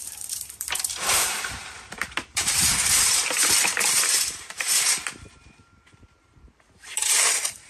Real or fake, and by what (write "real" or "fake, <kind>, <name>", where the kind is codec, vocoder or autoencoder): fake, vocoder, BigVGAN v2